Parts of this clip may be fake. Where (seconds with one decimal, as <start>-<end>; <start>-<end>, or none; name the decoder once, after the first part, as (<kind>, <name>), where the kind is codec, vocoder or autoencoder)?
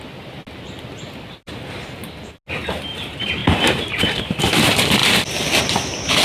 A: 5.0-5.6 (vocoder, BigVGAN v2)